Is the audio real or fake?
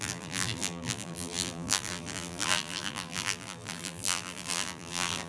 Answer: fake